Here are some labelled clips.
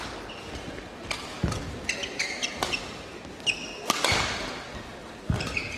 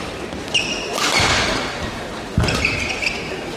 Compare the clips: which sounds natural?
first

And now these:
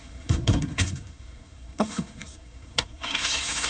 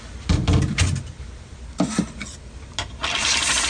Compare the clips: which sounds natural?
second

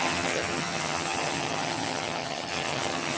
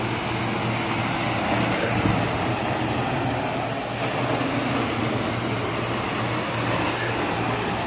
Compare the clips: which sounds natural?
second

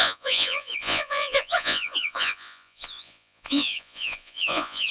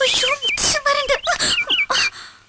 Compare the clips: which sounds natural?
second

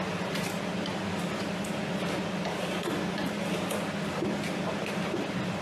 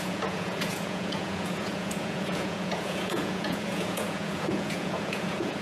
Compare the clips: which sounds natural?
first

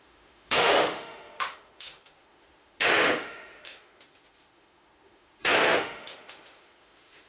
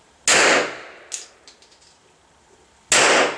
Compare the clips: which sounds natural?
second